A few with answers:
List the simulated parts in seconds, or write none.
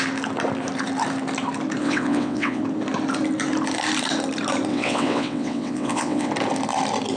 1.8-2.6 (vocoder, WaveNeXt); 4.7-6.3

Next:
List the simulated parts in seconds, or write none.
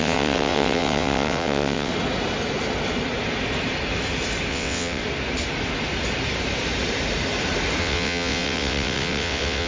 0.0-1.9 (vocoder, WaveNeXt); 4.5-5.0; 7.8-9.7